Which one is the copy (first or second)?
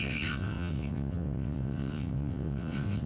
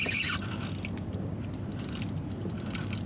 first